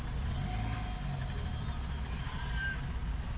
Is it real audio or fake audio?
real